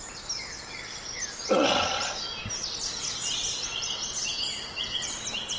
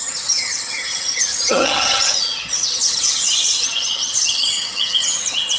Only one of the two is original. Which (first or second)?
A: first